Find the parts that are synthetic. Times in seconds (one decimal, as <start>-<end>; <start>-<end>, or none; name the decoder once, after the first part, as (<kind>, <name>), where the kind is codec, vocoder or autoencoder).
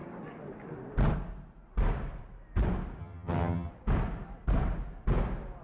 3.0-3.7 (vocoder, HiFi-GAN)